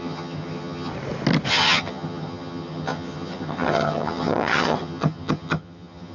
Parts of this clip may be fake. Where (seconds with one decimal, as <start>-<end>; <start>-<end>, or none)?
0.0-0.9; 1.5-6.1